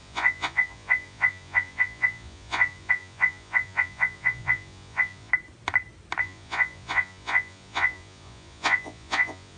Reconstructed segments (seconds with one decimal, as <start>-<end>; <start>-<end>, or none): 0.0-5.3; 6.2-9.6